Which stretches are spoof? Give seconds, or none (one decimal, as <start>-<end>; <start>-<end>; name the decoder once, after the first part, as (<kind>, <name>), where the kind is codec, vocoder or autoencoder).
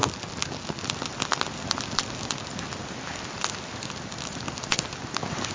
none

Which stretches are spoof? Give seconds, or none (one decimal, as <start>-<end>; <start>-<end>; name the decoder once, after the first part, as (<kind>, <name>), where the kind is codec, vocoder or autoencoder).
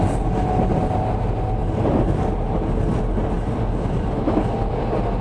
none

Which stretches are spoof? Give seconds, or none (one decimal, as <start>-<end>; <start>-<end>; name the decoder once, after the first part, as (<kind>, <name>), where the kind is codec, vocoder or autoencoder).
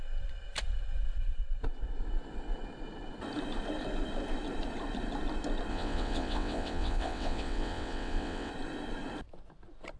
5.7-8.5 (vocoder, WaveNeXt)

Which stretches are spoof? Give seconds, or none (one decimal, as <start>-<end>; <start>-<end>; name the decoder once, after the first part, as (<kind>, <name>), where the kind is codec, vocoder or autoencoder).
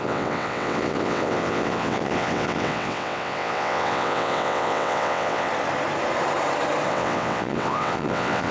0.0-5.5 (vocoder, WaveNeXt); 6.9-8.5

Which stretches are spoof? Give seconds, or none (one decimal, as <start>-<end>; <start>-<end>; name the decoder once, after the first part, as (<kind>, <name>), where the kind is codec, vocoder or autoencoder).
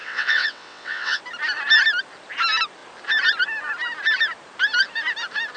0.0-1.2 (vocoder, WaveNeXt)